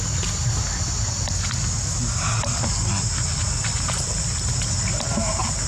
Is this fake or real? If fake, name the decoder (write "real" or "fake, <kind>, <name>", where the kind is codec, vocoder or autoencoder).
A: real